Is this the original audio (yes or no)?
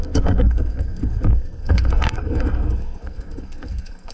no